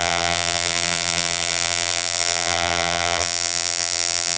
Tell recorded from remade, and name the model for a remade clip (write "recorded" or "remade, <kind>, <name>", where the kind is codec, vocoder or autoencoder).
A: remade, vocoder, BigVGAN v2